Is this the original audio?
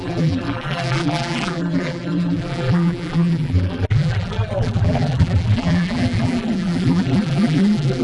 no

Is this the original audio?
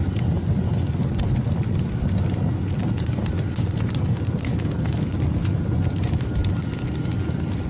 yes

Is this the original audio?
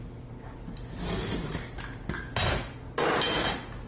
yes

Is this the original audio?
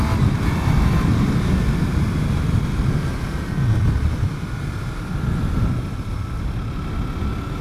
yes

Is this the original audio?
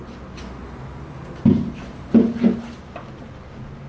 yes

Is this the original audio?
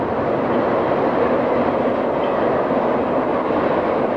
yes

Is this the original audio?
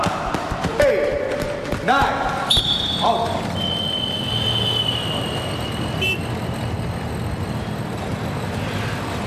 yes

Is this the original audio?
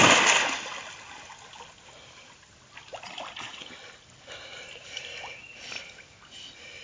yes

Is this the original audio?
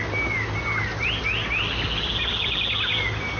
yes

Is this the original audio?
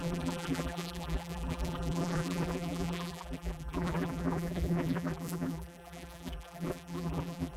no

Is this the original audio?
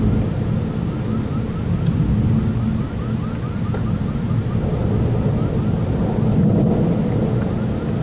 yes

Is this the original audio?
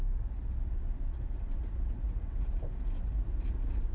yes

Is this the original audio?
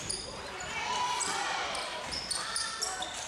no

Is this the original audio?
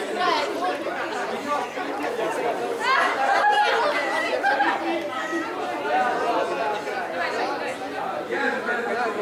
yes